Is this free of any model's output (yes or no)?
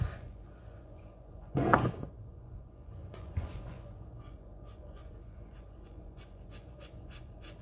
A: no